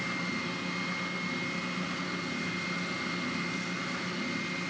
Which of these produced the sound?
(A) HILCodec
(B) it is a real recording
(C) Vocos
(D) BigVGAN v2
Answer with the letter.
B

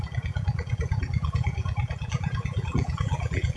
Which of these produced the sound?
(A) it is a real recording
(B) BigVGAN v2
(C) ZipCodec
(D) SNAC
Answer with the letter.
B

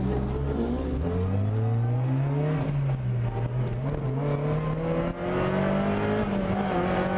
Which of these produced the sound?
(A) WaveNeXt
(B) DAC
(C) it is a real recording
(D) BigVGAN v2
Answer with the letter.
C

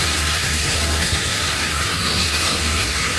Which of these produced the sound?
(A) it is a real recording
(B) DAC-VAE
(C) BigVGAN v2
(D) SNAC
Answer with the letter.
D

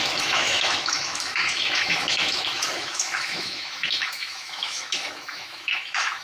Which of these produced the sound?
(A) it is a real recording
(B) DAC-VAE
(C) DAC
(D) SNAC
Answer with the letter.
B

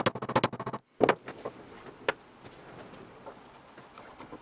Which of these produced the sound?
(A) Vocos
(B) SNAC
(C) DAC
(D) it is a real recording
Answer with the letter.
D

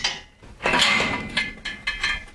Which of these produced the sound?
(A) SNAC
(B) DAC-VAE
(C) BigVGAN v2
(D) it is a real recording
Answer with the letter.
D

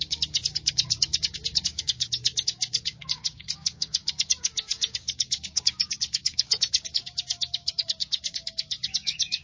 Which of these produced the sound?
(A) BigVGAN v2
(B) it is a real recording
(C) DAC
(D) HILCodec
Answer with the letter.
C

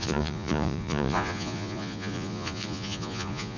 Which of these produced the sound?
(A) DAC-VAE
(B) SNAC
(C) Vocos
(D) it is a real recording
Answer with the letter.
C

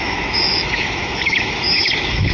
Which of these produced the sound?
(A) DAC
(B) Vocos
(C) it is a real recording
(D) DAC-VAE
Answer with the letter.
D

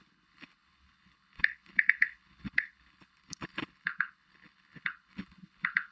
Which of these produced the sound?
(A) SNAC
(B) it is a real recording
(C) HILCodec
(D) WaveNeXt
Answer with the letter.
C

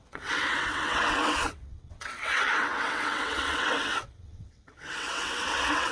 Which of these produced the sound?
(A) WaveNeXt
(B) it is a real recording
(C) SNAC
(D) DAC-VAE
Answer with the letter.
A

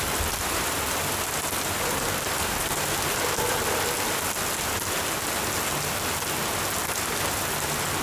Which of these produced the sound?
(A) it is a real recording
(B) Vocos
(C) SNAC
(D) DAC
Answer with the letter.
A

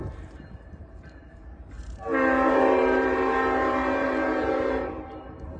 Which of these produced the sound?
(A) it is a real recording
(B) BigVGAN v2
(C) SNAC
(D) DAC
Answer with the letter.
B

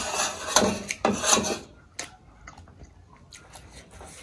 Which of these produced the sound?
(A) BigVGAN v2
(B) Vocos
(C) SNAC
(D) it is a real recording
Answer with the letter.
D